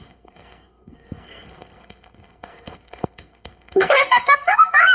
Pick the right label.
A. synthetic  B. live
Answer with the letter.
A